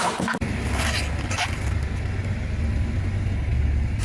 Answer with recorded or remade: recorded